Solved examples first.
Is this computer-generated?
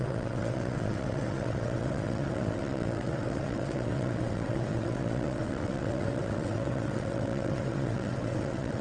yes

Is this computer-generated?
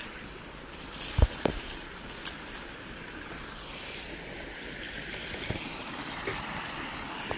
no